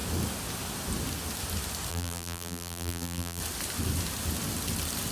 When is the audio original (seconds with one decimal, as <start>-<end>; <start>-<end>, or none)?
0.0-1.9; 3.4-5.1